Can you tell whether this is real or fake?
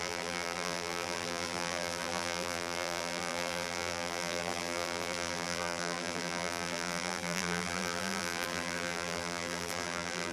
fake